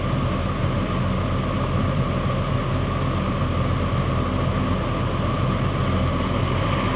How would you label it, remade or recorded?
recorded